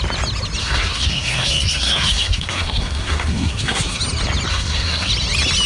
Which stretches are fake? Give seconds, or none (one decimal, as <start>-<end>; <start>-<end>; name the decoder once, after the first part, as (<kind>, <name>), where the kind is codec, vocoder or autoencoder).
0.6-4.0 (codec, SNAC); 4.5-5.1